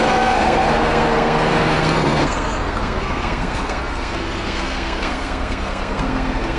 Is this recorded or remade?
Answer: remade